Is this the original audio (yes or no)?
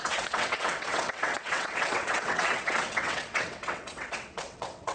no